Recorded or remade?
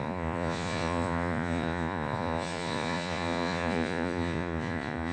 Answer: remade